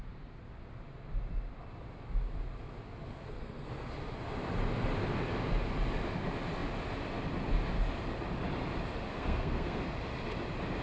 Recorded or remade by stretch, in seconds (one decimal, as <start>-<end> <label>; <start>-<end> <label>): 0.0-3.1 recorded; 3.1-3.9 remade; 3.9-9.1 recorded; 9.1-9.8 remade; 9.8-10.8 recorded